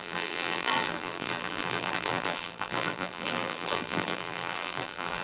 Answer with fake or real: fake